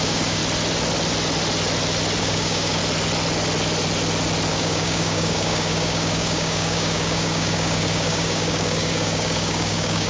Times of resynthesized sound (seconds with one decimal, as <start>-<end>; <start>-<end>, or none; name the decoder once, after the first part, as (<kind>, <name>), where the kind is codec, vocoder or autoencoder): 0.0-0.4 (codec, DAC); 2.2-2.8; 4.5-10.1